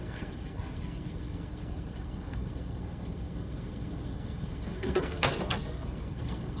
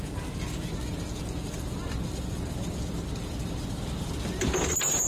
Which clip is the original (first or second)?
second